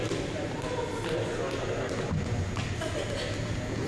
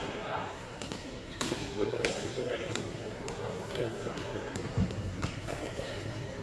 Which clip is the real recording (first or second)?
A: first